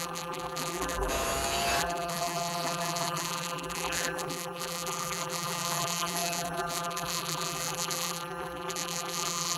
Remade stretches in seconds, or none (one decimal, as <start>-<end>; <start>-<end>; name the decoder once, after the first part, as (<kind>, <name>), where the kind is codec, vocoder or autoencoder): 0.0-1.1 (vocoder, BigVGAN v2); 1.8-9.6